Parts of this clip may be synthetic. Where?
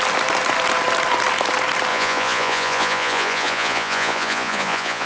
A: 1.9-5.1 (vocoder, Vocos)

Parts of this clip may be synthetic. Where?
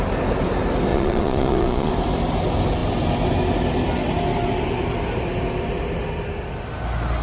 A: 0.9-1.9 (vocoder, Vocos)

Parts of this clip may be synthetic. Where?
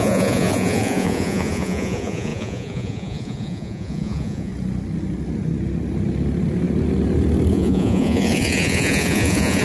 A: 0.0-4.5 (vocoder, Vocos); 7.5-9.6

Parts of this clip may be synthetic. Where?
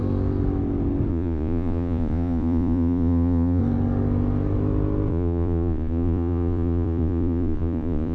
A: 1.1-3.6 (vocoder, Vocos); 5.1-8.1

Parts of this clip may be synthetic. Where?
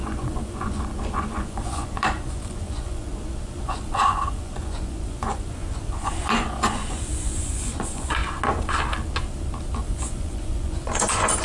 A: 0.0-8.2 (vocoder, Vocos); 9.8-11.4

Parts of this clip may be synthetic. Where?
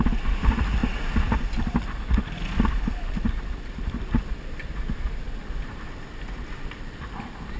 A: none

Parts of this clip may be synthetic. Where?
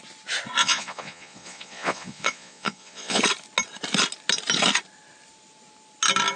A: 0.6-3.2 (vocoder, Vocos)